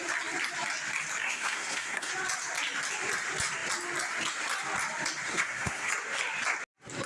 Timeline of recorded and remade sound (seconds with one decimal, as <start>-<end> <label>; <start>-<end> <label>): 0.0-1.2 recorded; 1.2-2.1 remade; 2.1-5.3 recorded; 5.3-5.9 remade; 5.9-7.1 recorded